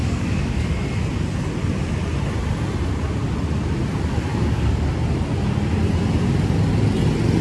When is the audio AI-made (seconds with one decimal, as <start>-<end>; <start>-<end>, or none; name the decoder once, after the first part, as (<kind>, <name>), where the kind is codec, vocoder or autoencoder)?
0.0-0.7 (codec, DAC); 4.3-4.9